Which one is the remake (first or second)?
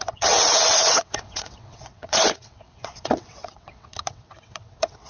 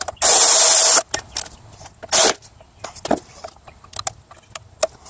first